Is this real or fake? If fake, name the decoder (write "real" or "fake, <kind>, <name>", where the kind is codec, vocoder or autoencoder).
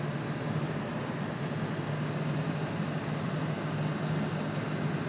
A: real